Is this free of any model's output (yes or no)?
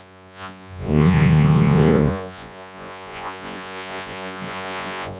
no